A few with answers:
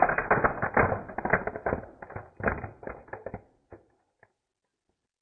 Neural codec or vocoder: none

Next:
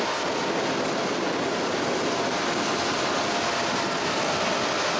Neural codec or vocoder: none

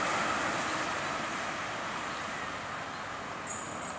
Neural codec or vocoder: none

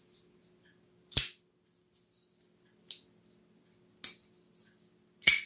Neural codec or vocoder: none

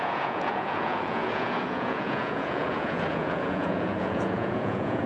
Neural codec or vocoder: vocoder, Vocos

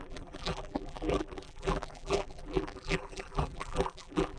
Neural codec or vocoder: vocoder, BigVGAN v2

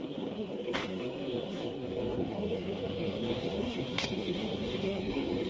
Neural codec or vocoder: codec, SNAC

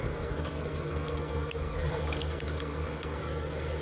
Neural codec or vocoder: codec, SNAC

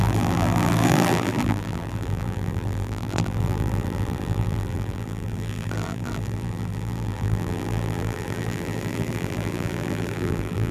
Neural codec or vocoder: vocoder, BigVGAN v2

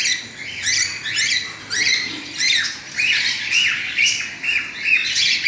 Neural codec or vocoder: none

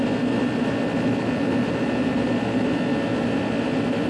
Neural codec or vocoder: none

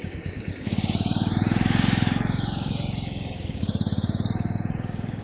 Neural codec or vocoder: codec, DAC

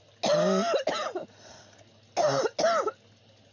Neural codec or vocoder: none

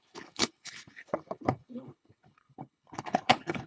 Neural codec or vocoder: codec, HILCodec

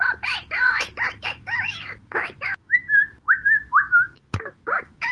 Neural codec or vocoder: autoencoder, DAC-VAE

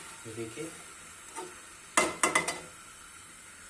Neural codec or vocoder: none